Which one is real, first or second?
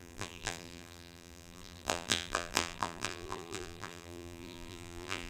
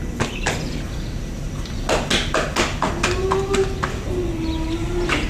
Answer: second